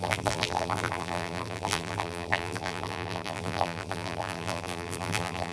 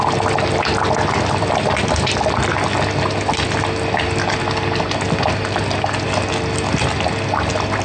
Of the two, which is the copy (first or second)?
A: first